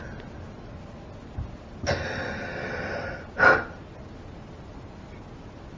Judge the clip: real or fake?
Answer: real